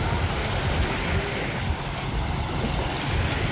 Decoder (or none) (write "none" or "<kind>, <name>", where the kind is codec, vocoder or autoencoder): none